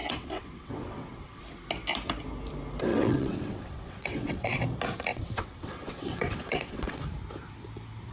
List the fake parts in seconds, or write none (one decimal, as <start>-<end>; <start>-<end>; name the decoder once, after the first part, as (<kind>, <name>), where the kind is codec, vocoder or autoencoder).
0.0-1.4 (vocoder, WaveNeXt); 2.9-4.6; 5.1-7.0